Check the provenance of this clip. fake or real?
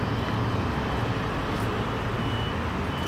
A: real